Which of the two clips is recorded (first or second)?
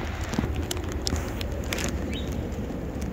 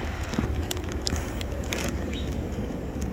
first